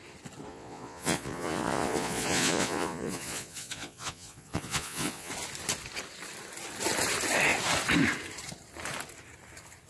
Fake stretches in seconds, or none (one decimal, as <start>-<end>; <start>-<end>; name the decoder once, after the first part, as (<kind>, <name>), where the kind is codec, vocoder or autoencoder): 0.5-5.3 (vocoder, Vocos)